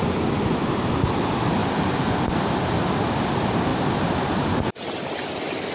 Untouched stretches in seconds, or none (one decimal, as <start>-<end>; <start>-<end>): 0.0-5.7